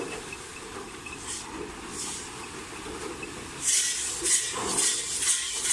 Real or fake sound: real